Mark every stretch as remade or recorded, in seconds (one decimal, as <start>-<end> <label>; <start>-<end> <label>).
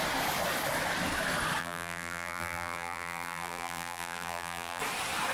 0.0-1.6 recorded; 1.6-4.8 remade; 4.8-5.3 recorded